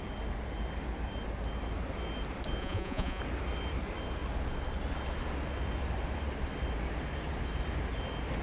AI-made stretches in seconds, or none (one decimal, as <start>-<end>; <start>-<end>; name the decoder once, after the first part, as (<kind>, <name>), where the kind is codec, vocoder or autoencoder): 2.6-3.2 (vocoder, Vocos)